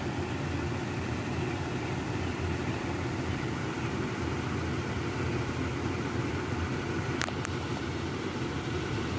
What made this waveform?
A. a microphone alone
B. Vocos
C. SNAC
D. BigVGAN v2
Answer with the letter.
A